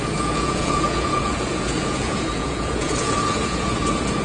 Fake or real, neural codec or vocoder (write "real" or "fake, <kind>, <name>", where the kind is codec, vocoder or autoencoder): fake, vocoder, Vocos